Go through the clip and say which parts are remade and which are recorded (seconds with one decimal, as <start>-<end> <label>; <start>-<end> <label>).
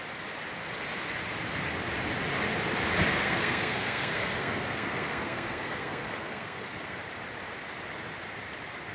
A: 0.0-3.1 recorded; 3.1-7.0 remade; 7.0-8.9 recorded